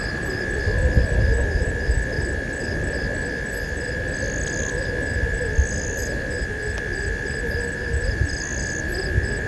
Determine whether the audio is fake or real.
real